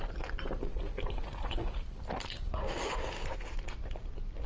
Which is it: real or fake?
real